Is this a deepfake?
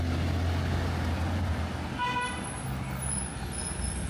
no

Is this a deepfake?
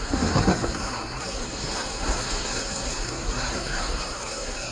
yes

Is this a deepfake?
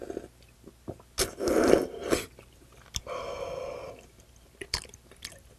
no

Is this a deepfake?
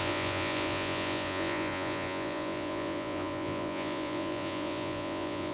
yes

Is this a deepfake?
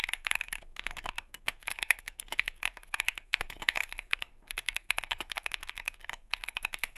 yes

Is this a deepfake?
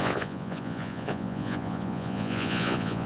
yes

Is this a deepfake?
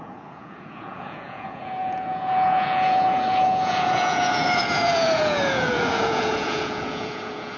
yes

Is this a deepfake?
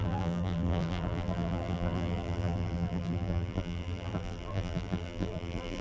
yes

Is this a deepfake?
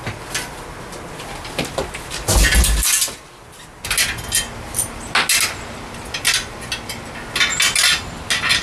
no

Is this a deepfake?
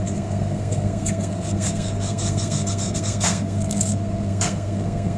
yes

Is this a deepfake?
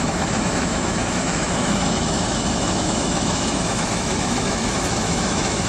yes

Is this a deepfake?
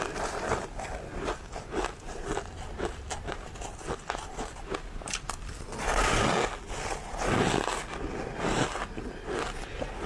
no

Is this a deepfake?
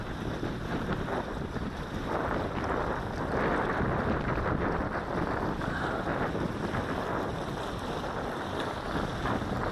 no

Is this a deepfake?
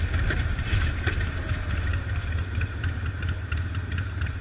yes